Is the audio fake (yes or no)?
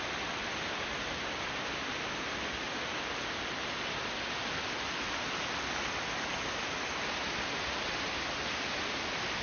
no